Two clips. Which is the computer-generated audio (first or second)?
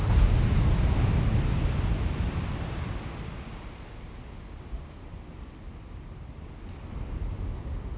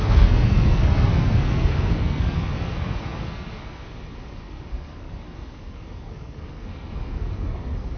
second